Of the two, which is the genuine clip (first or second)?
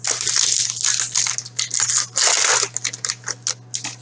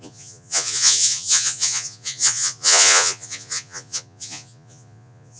first